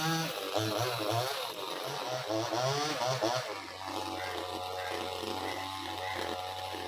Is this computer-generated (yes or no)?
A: no